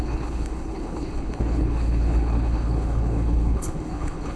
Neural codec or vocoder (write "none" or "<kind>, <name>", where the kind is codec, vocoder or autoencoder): codec, HILCodec